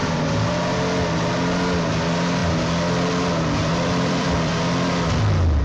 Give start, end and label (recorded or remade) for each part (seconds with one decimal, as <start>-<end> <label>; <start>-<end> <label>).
0.0-0.5 remade; 0.5-3.6 recorded; 3.6-4.5 remade; 4.5-5.6 recorded